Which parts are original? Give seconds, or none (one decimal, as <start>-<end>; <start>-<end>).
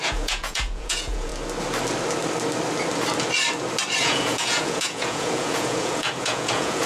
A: 1.3-4.0